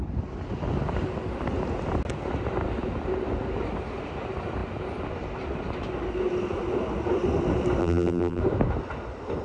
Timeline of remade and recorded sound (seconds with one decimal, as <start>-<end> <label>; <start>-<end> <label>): 0.0-7.8 recorded; 7.8-8.4 remade; 8.4-9.4 recorded